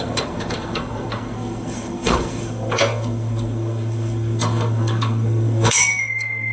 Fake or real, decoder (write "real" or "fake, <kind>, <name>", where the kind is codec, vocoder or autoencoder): fake, codec, SNAC